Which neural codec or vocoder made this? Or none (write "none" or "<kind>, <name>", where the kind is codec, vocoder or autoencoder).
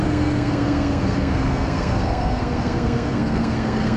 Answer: codec, SNAC